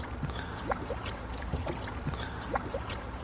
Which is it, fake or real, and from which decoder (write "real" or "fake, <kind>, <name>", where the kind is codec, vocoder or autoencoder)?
fake, vocoder, BigVGAN v2